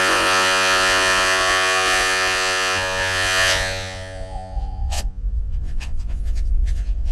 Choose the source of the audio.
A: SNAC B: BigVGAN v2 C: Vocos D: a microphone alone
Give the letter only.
C